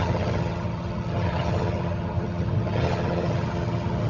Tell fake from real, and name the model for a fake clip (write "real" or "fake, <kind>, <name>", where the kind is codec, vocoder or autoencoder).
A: fake, vocoder, HiFi-GAN